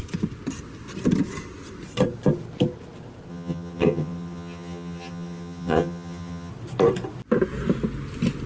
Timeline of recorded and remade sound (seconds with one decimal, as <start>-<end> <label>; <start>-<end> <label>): 0.0-3.3 recorded; 3.3-6.5 remade; 6.5-8.5 recorded

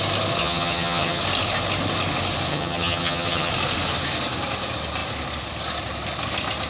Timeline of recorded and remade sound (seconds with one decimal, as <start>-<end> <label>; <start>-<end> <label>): 0.0-0.4 recorded; 0.4-1.2 remade; 1.2-2.5 recorded; 2.5-3.5 remade; 3.5-6.7 recorded

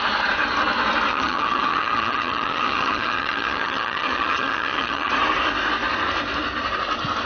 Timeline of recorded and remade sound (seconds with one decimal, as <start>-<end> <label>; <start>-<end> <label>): 0.0-1.1 recorded; 1.1-5.1 remade; 5.1-7.3 recorded

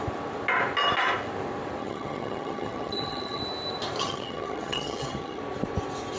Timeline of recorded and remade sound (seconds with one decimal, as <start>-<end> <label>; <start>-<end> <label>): 0.0-1.8 recorded; 1.8-3.4 remade; 3.4-4.0 recorded; 4.0-5.4 remade; 5.4-6.2 recorded

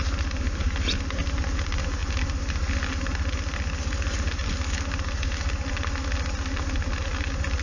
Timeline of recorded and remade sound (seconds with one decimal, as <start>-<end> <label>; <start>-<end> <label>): 0.0-7.6 recorded